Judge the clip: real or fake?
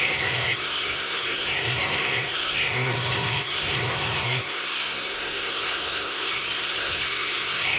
fake